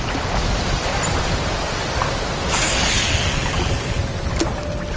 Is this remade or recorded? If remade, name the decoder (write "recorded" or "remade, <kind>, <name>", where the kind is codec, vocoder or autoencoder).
recorded